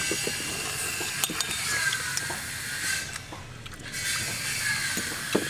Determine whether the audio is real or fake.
real